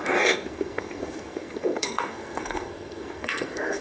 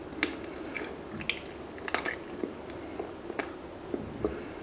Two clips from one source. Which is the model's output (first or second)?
first